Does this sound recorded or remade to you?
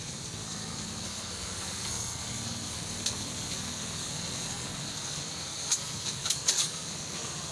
remade